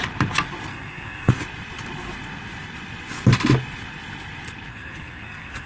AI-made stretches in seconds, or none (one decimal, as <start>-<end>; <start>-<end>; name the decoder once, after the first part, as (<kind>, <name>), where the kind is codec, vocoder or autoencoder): 0.7-1.3 (codec, SNAC); 4.7-5.7